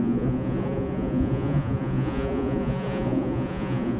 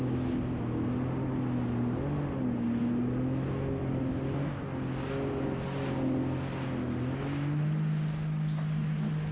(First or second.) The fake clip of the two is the first